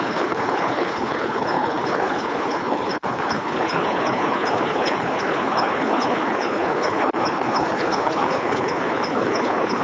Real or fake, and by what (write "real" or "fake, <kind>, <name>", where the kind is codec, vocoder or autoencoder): fake, codec, HILCodec